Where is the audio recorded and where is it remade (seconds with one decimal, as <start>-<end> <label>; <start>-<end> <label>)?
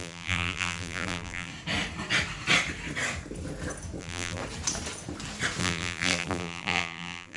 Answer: 0.0-1.5 remade; 1.5-4.0 recorded; 4.0-4.4 remade; 4.4-5.6 recorded; 5.6-7.4 remade